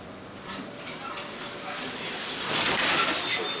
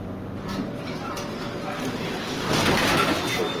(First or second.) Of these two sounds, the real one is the second